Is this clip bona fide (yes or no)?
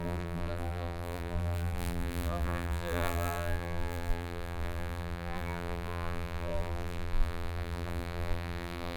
no